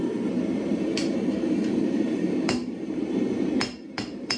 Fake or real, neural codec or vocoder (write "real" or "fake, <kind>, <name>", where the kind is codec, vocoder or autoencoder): fake, vocoder, BigVGAN v2